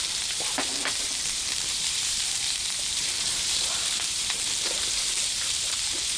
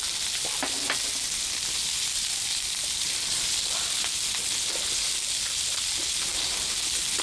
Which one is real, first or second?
second